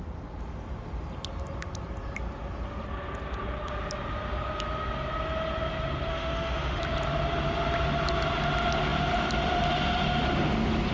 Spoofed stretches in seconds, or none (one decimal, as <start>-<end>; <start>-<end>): 6.1-6.8

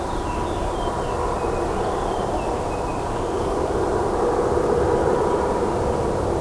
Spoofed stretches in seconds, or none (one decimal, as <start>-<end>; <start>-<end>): 2.9-3.7